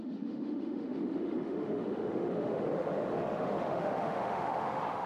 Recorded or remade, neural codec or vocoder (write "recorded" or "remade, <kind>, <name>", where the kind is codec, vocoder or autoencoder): remade, autoencoder, DAC-VAE